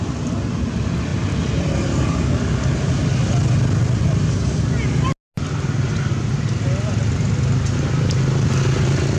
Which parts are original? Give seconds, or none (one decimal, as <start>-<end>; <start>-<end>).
0.0-9.2